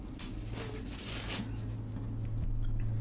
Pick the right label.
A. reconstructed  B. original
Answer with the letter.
B